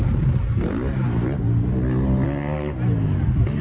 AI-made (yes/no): no